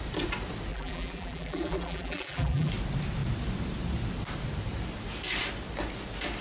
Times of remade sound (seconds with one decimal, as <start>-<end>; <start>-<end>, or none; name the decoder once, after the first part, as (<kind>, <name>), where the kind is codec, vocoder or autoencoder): 0.7-2.7 (vocoder, BigVGAN v2)